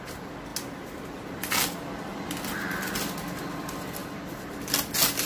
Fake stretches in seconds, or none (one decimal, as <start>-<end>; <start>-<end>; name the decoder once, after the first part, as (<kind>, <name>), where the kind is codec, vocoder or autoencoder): 4.0-4.7 (vocoder, BigVGAN v2)